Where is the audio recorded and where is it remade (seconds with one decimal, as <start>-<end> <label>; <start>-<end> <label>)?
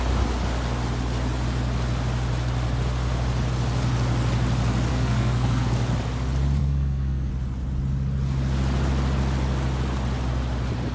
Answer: 0.0-4.9 recorded; 4.9-5.7 remade; 5.7-6.6 recorded; 6.6-7.3 remade; 7.3-10.9 recorded